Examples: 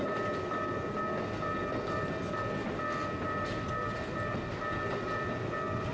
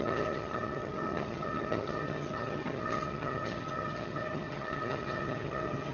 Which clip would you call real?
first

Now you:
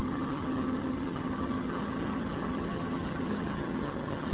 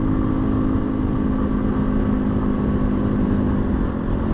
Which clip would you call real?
second